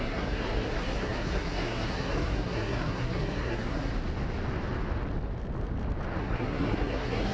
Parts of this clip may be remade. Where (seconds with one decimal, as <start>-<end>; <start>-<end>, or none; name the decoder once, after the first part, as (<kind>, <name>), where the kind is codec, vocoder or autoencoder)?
0.0-3.9 (codec, SNAC); 6.2-7.3